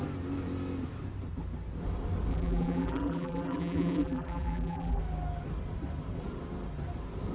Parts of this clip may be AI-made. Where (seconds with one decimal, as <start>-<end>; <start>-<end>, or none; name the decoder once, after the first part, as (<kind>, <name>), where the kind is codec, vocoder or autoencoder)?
2.3-5.0 (vocoder, BigVGAN v2)

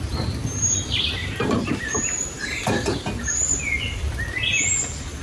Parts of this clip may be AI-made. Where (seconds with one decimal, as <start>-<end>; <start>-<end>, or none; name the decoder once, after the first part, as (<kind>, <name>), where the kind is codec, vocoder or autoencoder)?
1.2-3.6 (vocoder, BigVGAN v2)

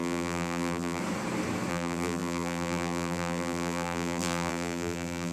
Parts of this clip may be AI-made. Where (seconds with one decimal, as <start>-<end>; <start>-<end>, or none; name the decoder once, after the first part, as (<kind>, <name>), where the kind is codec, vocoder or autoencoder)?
0.0-1.0 (vocoder, BigVGAN v2); 1.7-5.3

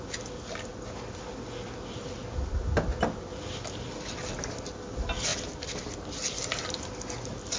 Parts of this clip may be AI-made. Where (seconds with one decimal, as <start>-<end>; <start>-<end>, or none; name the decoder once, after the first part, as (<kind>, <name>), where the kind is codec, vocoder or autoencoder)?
none

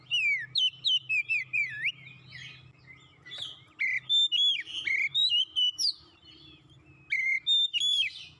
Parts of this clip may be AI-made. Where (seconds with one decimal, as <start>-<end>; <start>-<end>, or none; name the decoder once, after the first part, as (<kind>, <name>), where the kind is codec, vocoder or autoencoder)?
1.2-2.1 (vocoder, BigVGAN v2); 5.2-6.8